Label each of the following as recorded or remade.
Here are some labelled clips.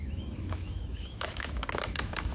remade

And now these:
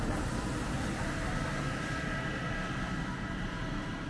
recorded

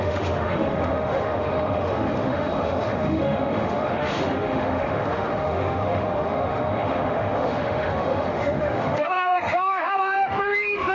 remade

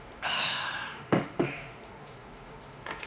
remade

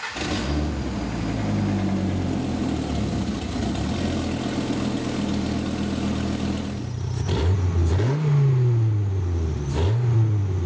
recorded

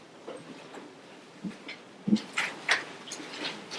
recorded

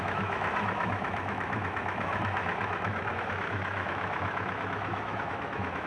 remade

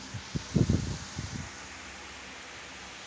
recorded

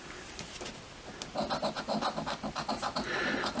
recorded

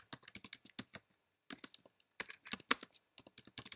recorded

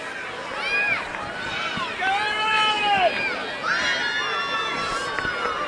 recorded